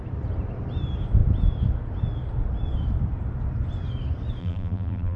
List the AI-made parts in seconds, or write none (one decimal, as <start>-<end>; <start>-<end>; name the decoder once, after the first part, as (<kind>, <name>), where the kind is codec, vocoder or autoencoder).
4.4-5.2 (vocoder, BigVGAN v2)